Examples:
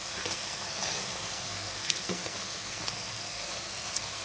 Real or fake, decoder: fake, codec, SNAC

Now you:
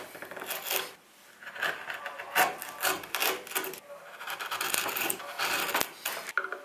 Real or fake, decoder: real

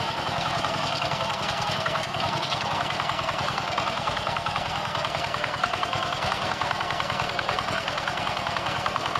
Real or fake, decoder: fake, codec, SNAC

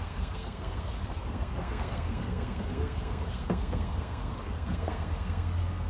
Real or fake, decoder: fake, codec, SNAC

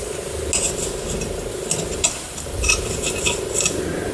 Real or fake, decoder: real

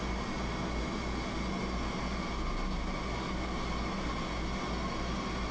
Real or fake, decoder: real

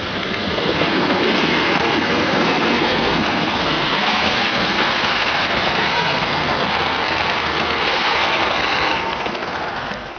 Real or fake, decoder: fake, codec, SNAC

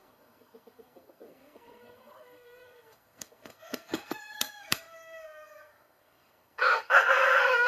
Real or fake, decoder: fake, codec, SNAC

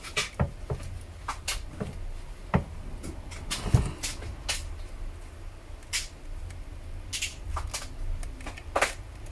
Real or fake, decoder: real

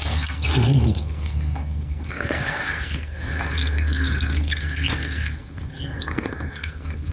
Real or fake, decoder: fake, codec, SNAC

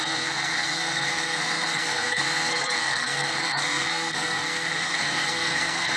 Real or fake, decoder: fake, codec, SNAC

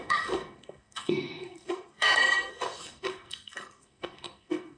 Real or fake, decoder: fake, codec, SNAC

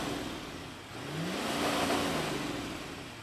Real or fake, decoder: real